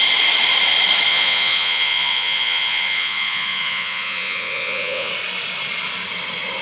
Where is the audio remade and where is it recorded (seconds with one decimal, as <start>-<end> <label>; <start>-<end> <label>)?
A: 0.0-1.1 recorded; 1.1-5.1 remade; 5.1-6.6 recorded